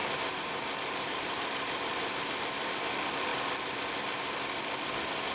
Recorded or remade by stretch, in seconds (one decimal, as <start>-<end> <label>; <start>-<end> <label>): 0.0-3.3 remade; 3.3-5.3 recorded